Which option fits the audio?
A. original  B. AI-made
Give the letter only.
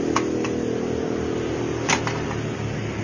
A